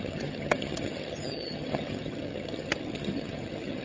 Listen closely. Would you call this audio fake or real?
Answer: fake